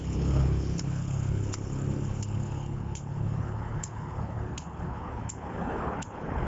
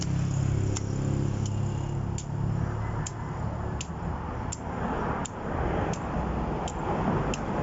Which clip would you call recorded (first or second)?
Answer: second